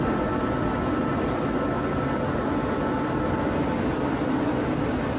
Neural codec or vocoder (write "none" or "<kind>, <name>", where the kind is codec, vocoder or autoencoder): none